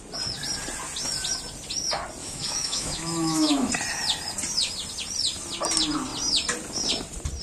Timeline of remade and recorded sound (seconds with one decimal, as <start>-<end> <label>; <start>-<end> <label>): 0.0-2.2 recorded; 2.2-3.7 remade; 3.7-7.4 recorded